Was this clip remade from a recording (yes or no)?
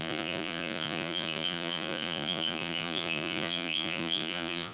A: yes